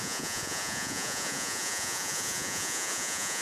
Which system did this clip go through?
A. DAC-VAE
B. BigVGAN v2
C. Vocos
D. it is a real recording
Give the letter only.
C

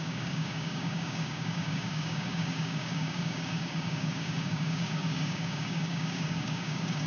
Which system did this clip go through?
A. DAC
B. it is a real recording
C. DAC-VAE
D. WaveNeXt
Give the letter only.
A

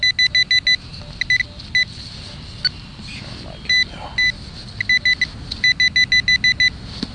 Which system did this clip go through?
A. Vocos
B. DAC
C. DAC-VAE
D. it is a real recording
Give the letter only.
D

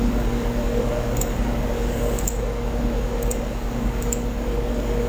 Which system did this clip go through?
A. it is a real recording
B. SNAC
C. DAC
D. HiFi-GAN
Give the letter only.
C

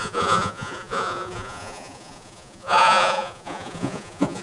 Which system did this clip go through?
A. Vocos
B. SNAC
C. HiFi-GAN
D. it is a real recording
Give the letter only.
A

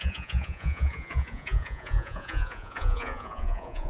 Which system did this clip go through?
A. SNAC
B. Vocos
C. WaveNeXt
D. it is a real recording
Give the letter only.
B